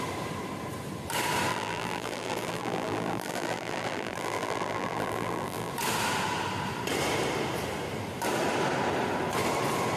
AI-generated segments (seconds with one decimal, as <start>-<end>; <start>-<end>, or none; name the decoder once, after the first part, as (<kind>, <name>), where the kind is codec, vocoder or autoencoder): 1.5-5.7 (vocoder, BigVGAN v2)